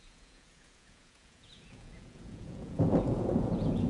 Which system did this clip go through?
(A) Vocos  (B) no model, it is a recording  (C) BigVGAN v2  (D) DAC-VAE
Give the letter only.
A